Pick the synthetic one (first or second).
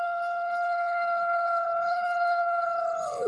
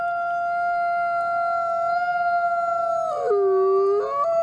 first